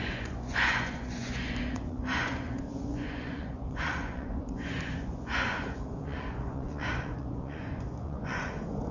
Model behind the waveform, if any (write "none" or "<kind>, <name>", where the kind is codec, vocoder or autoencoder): vocoder, Vocos